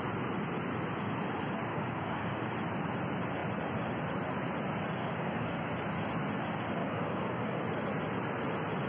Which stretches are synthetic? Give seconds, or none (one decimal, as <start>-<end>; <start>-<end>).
1.7-2.5; 5.0-5.7; 6.8-7.6